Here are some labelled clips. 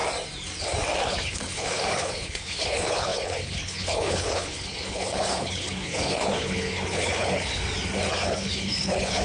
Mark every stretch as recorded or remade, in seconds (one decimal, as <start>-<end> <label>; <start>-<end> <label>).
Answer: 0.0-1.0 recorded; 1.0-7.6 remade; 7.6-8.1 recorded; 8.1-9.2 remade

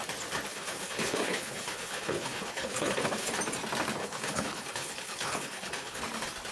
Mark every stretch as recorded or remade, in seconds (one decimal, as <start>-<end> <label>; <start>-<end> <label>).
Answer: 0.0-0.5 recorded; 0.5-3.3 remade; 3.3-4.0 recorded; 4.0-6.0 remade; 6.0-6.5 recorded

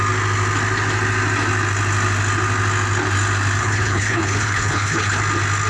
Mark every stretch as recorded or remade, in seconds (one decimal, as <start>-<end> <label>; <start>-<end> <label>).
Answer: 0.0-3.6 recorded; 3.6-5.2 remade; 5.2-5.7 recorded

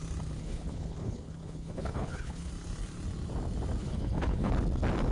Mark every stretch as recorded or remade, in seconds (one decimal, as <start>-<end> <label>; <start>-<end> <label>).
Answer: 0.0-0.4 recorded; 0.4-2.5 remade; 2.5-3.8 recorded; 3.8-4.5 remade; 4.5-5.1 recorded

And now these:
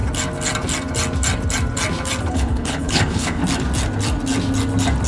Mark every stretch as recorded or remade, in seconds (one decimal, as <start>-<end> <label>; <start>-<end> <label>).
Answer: 0.0-2.3 recorded; 2.3-3.4 remade; 3.4-5.1 recorded

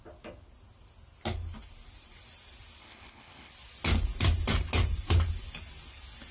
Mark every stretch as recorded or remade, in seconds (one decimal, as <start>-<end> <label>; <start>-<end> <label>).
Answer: 0.0-2.8 recorded; 2.8-3.5 remade; 3.5-6.3 recorded

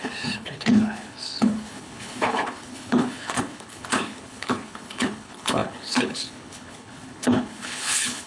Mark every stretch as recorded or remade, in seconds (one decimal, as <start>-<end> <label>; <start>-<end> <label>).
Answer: 0.0-8.3 remade

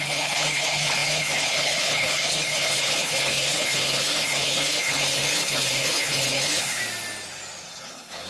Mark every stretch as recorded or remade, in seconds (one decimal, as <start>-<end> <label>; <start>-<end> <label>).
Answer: 0.0-6.8 remade; 6.8-7.7 recorded; 7.7-8.3 remade